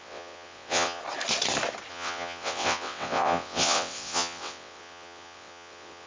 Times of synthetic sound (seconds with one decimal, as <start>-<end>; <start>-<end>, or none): 0.0-1.0; 1.9-6.1